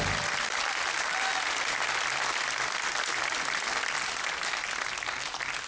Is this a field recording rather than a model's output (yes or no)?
yes